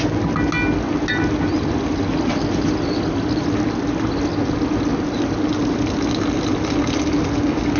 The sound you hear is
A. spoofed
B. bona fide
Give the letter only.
B